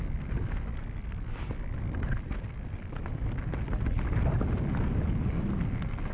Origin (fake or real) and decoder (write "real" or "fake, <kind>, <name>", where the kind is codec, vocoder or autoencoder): real